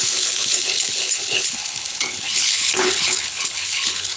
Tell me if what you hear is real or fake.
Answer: fake